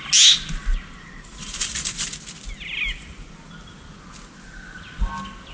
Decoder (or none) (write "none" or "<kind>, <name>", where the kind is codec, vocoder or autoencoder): none